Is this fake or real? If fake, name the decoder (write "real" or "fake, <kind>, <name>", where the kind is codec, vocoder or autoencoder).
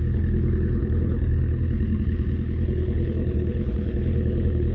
fake, codec, HILCodec